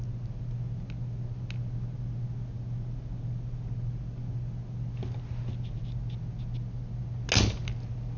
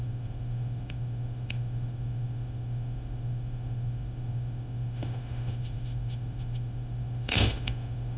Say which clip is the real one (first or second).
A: first